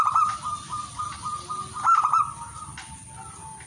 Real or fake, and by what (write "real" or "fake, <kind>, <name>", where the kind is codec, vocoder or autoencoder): real